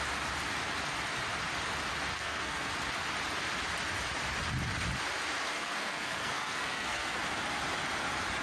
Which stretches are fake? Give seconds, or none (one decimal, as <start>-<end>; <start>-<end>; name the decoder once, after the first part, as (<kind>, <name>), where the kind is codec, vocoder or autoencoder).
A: 2.1-2.7 (codec, SNAC); 5.5-7.2